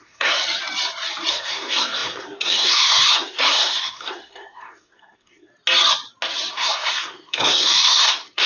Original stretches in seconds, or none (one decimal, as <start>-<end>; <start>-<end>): 0.4-1.3; 5.5-6.5

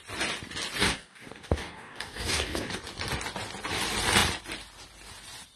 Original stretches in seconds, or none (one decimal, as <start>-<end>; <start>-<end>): 0.0-0.8; 2.8-5.6